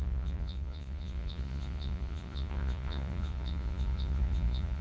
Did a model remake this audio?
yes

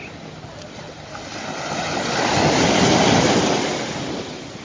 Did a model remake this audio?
no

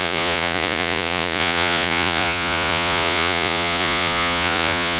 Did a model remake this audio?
yes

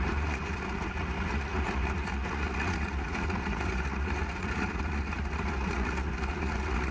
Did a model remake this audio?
yes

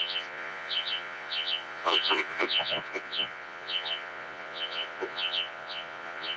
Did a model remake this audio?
yes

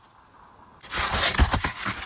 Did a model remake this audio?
no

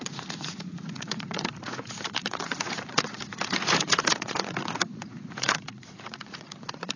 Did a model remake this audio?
yes